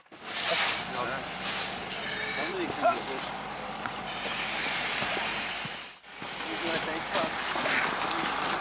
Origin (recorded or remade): remade